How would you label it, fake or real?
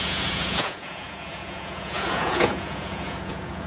fake